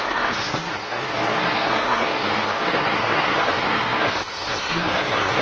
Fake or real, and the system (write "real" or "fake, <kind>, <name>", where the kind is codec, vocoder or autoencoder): fake, codec, SNAC